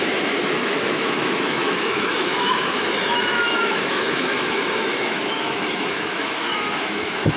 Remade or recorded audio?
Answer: remade